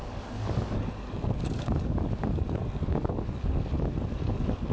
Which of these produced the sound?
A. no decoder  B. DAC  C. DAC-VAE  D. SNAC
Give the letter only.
B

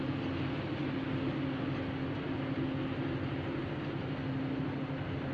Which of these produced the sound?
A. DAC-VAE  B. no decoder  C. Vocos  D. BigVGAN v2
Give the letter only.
B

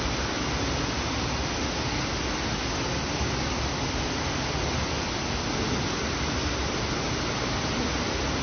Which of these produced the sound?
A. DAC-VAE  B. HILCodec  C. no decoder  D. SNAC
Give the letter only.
C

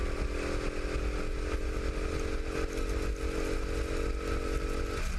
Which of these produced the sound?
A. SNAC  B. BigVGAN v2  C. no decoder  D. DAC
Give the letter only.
C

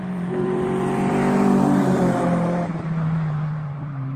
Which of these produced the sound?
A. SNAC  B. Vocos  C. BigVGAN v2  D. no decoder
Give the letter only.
C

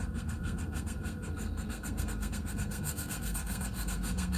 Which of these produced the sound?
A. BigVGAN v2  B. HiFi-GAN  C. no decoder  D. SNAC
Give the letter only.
D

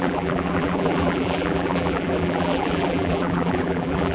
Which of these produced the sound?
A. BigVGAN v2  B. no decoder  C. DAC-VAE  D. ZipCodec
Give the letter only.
A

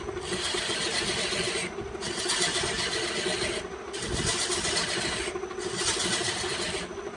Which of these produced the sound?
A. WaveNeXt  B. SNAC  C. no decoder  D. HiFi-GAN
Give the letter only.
C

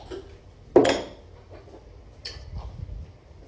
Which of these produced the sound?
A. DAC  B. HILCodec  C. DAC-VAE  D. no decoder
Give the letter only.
D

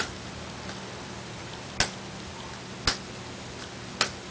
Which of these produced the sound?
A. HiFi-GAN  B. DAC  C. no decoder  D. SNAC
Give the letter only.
C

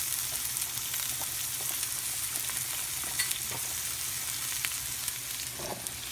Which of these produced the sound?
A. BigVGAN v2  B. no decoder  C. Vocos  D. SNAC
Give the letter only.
B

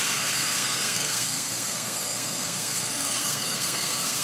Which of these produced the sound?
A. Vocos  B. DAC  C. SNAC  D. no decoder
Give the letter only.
C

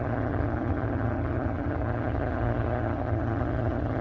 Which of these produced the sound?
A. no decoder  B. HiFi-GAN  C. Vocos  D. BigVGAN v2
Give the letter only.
B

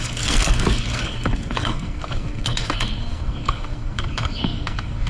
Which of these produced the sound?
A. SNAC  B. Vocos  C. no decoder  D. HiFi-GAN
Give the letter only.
A